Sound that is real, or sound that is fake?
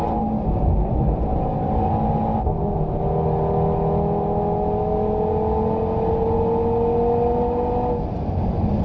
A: real